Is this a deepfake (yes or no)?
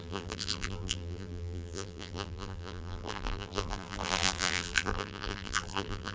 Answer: yes